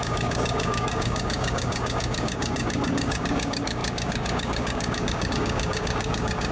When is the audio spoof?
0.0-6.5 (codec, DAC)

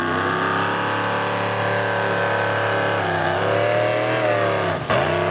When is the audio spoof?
none